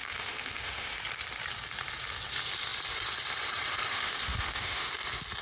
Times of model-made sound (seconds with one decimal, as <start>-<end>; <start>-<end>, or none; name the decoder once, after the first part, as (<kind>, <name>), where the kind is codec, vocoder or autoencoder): 0.0-1.0 (autoencoder, DAC-VAE); 3.9-4.9